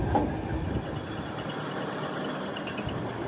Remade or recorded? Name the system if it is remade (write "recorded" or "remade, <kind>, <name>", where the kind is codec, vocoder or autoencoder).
recorded